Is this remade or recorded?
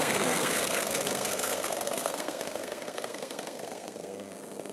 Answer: remade